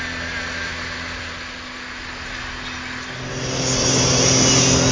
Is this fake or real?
real